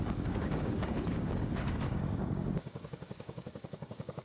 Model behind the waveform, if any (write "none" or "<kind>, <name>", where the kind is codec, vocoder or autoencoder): codec, DAC